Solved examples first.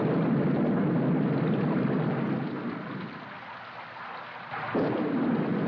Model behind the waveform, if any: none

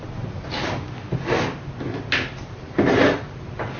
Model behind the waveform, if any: none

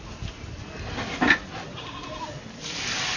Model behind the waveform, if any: none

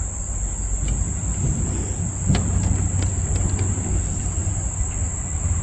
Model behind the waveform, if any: none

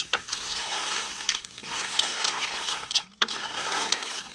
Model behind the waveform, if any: codec, SNAC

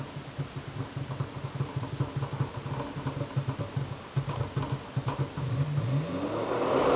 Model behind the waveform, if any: none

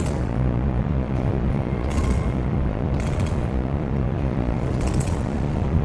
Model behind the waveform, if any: vocoder, Vocos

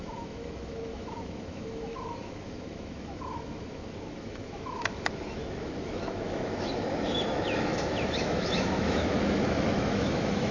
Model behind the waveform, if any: autoencoder, DAC-VAE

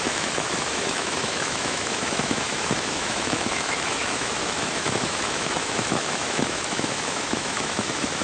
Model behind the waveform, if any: autoencoder, DAC-VAE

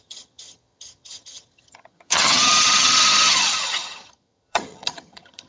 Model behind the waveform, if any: vocoder, HiFi-GAN